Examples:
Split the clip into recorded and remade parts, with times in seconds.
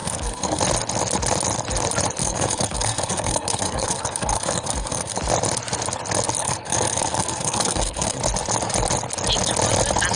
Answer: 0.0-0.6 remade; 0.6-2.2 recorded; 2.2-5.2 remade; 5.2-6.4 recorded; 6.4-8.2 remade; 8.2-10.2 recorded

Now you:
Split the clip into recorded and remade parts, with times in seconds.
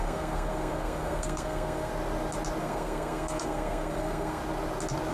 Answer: 0.0-1.9 remade; 1.9-2.6 recorded; 2.6-4.4 remade; 4.4-5.1 recorded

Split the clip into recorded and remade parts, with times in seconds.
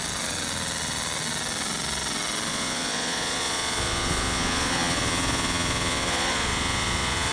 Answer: 0.0-2.5 recorded; 2.5-7.3 remade